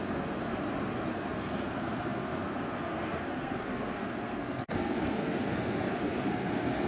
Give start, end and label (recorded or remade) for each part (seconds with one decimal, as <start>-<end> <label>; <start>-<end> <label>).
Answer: 0.0-0.5 remade; 0.5-1.1 recorded; 1.1-6.9 remade